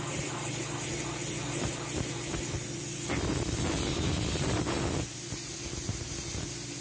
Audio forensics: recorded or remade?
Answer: recorded